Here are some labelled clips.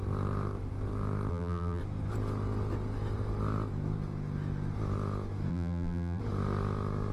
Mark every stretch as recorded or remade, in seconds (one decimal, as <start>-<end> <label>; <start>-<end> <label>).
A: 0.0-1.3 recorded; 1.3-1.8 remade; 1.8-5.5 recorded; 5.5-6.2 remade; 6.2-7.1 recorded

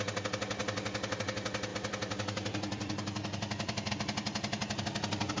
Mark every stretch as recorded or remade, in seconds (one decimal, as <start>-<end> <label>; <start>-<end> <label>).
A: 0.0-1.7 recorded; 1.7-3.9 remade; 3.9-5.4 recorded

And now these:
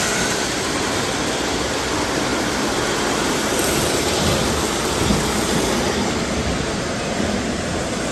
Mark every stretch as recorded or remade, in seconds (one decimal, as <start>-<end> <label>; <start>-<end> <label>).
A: 0.0-8.1 recorded

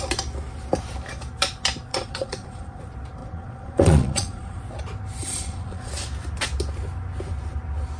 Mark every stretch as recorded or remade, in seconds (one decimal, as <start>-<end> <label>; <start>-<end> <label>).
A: 0.0-1.9 recorded; 1.9-2.8 remade; 2.8-3.2 recorded; 3.2-4.6 remade; 4.6-5.2 recorded; 5.2-5.9 remade; 5.9-8.0 recorded

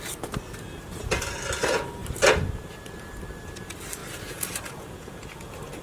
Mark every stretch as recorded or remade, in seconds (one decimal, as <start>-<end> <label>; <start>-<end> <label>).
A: 0.0-4.0 recorded; 4.0-5.8 remade